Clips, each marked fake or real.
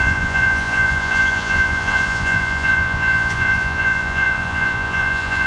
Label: fake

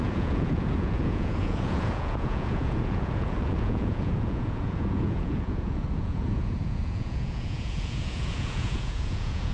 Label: fake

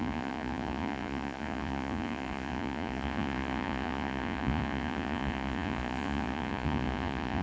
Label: fake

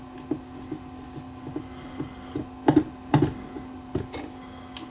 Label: real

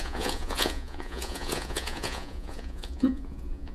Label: fake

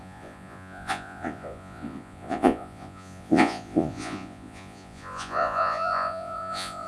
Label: fake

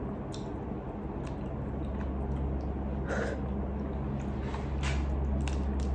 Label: real